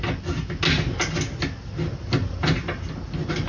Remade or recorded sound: recorded